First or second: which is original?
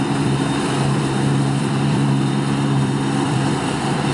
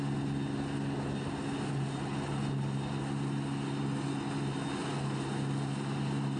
second